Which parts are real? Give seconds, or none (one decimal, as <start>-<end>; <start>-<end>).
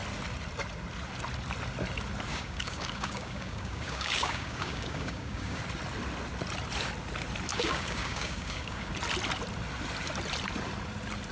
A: 0.0-2.3; 5.6-7.5; 8.9-11.3